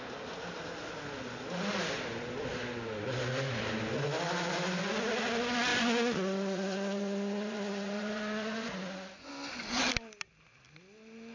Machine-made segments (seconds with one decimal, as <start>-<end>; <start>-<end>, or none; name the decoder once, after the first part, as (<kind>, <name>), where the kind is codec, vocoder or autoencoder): 5.7-9.3 (vocoder, Vocos)